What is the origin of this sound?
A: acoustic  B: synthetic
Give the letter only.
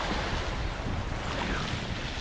A